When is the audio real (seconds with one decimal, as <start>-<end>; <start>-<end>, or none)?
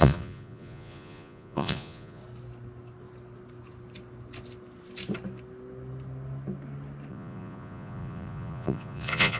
2.2-7.1